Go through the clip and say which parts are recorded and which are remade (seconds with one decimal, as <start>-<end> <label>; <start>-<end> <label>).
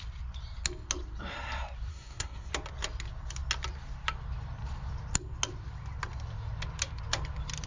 0.0-1.9 recorded; 1.9-2.5 remade; 2.5-7.7 recorded